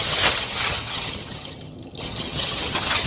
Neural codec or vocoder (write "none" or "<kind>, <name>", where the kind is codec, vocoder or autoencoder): vocoder, HiFi-GAN